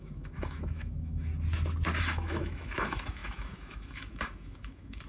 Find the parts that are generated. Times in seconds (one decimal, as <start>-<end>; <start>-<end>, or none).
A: 0.0-1.3; 2.0-5.1